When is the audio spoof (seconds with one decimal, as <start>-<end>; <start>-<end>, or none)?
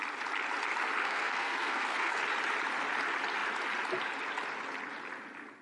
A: 1.0-2.2